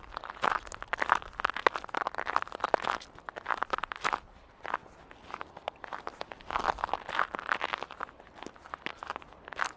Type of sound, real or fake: real